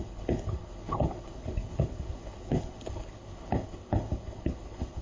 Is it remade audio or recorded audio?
remade